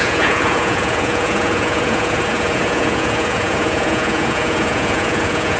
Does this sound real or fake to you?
fake